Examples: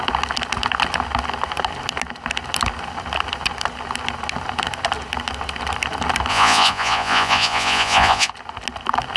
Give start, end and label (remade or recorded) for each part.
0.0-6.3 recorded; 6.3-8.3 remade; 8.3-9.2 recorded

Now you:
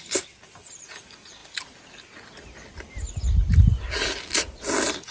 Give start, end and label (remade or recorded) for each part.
0.0-5.1 recorded

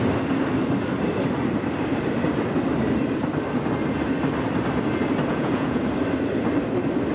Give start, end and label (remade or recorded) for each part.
0.0-5.3 recorded; 5.3-5.8 remade; 5.8-7.1 recorded

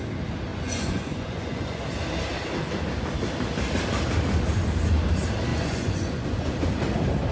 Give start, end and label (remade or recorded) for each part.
0.0-0.5 recorded; 0.5-1.8 remade; 1.8-5.5 recorded; 5.5-6.5 remade; 6.5-7.3 recorded

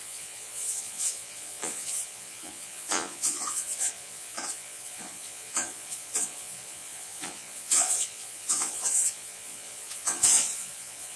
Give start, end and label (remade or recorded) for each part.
0.0-11.2 remade

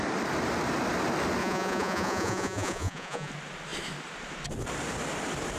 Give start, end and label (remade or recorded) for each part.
0.0-1.4 recorded; 1.4-3.3 remade; 3.3-5.6 recorded

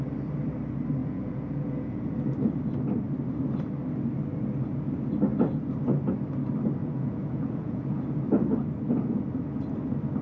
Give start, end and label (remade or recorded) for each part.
0.0-1.0 recorded; 1.0-2.1 remade; 2.1-6.8 recorded; 6.8-8.0 remade; 8.0-10.2 recorded

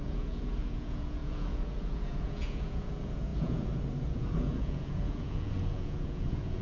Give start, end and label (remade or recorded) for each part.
0.0-6.6 remade